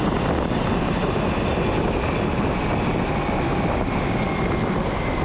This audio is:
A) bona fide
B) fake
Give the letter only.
A